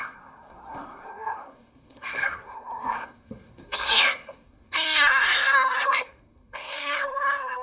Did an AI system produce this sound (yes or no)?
yes